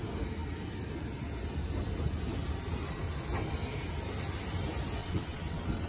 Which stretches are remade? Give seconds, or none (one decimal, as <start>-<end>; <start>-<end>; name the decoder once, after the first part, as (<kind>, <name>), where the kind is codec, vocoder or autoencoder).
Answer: 5.0-5.9 (vocoder, WaveNeXt)